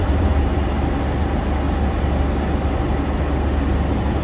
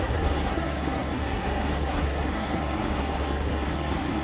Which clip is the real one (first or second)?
first